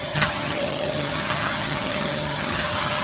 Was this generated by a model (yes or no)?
yes